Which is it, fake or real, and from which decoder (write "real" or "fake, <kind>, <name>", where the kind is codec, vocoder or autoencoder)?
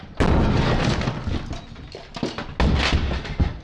real